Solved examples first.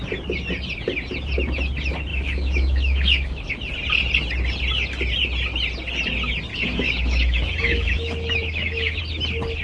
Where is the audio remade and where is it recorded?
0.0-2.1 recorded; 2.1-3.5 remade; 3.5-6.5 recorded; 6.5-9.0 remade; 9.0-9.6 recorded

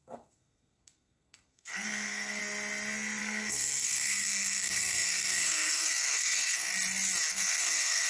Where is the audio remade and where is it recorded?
0.0-2.4 remade; 2.4-3.2 recorded; 3.2-6.7 remade; 6.7-7.3 recorded; 7.3-8.1 remade